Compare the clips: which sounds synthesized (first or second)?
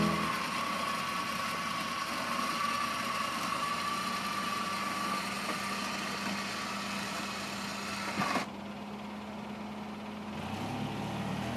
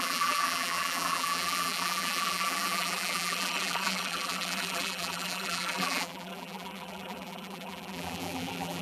second